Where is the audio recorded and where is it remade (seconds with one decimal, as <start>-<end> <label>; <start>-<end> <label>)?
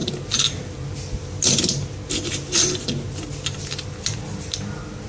0.0-5.1 recorded